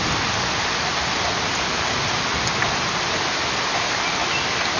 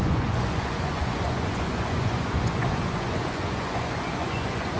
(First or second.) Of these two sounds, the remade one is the second